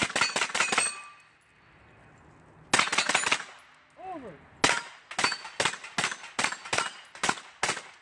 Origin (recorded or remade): recorded